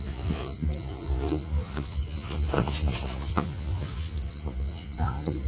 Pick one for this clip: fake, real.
fake